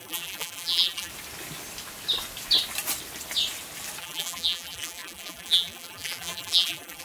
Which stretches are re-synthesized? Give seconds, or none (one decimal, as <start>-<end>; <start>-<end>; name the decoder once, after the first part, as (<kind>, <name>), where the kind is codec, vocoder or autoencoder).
0.0-1.1 (vocoder, BigVGAN v2); 4.0-7.0